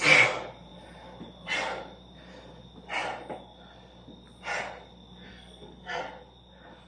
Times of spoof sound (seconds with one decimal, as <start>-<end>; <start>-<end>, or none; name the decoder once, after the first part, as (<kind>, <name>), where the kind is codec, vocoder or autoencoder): 5.3-6.0 (codec, SNAC)

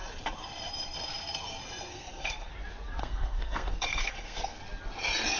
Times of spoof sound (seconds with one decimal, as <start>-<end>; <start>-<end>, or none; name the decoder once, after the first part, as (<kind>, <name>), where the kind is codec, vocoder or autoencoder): 1.9-2.5 (codec, SNAC); 3.0-4.6

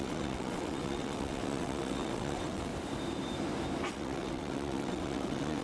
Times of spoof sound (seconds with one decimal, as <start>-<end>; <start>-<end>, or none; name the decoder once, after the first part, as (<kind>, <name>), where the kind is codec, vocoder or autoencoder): 0.0-2.7 (vocoder, WaveNeXt); 3.9-5.6

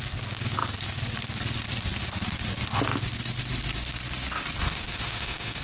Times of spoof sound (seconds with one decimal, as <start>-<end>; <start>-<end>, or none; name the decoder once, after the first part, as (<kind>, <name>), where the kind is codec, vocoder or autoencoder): 4.6-5.6 (autoencoder, DAC-VAE)

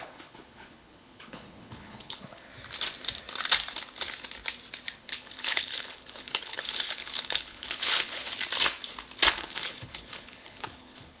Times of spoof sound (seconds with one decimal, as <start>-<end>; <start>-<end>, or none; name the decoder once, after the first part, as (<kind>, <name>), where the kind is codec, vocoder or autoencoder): 0.0-2.5 (codec, HILCodec); 5.0-8.2; 9.3-11.2

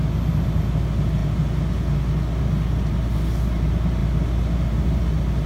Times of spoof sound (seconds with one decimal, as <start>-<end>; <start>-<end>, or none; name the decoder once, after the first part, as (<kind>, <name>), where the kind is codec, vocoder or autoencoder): none